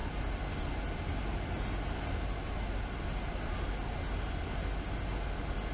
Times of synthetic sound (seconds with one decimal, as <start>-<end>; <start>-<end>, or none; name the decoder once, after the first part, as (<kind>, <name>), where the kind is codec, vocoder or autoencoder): none